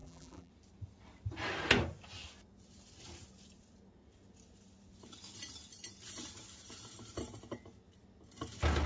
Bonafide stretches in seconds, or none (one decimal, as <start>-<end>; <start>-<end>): 0.5-8.9